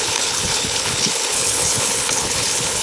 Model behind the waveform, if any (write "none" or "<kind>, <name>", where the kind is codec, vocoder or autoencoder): codec, HILCodec